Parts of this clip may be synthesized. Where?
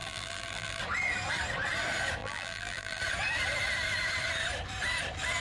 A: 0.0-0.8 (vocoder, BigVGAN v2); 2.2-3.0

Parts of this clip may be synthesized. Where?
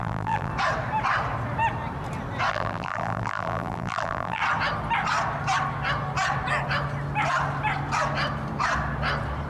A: 0.0-0.5 (vocoder, BigVGAN v2); 2.5-4.4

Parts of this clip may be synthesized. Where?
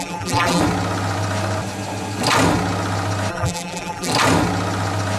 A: 0.0-0.6 (vocoder, BigVGAN v2); 3.3-4.1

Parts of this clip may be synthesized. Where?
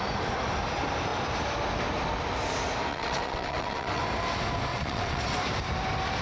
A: 2.9-4.0 (vocoder, WaveNeXt); 4.7-5.2